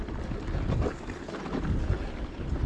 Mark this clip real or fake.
real